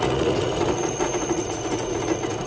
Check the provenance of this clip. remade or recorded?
remade